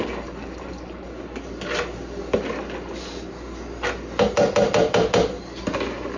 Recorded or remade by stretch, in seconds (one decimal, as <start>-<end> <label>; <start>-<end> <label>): 0.0-1.1 remade; 1.1-6.2 recorded